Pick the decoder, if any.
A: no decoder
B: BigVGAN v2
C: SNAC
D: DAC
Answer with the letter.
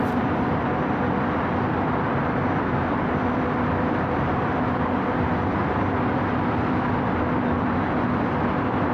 B